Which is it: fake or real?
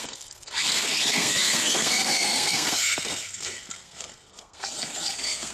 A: fake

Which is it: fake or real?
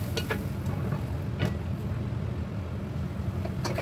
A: real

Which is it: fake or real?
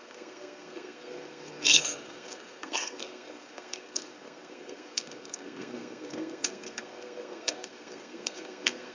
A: fake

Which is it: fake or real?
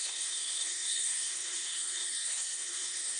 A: fake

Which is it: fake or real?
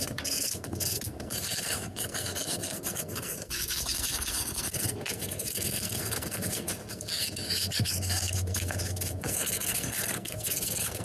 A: fake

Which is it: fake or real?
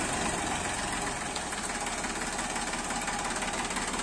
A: real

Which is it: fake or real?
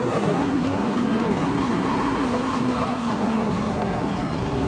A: fake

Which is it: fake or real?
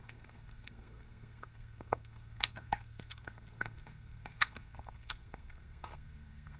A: fake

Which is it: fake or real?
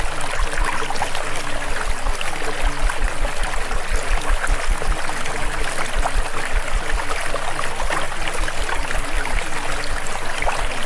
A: real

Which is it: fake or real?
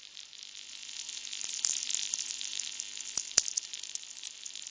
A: real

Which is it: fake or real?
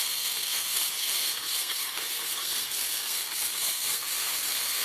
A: fake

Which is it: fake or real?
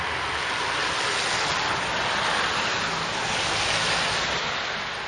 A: real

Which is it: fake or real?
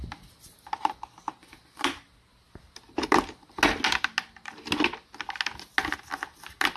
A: real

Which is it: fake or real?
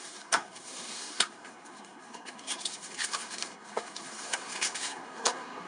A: fake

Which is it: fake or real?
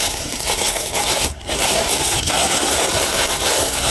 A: fake